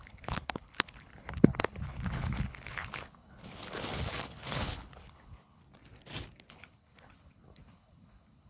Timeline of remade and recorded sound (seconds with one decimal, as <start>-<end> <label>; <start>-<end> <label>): 0.0-5.6 remade; 5.6-6.5 recorded; 6.5-8.5 remade